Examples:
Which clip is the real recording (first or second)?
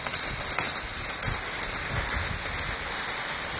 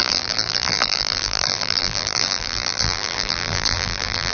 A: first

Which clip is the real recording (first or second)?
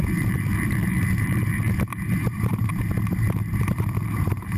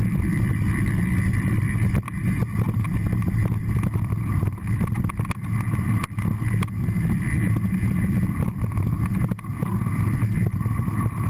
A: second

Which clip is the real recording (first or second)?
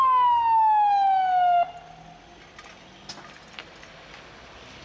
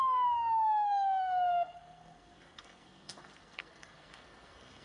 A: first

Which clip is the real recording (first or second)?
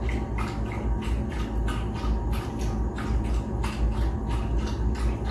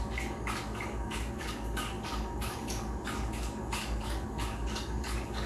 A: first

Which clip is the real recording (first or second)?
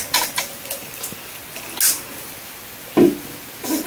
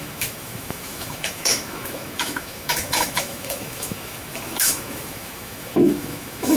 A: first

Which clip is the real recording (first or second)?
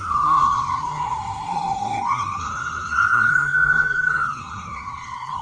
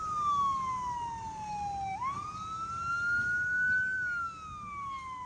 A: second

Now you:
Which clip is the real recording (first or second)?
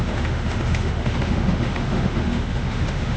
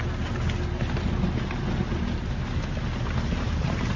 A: second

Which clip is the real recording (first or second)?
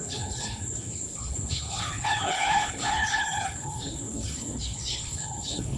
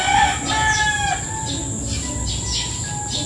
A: second